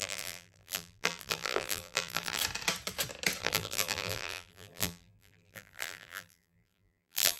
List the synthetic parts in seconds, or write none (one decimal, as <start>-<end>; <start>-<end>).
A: 0.0-2.4; 3.4-7.4